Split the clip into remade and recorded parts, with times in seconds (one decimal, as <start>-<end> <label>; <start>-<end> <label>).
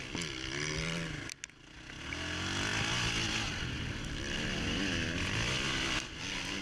0.0-6.6 recorded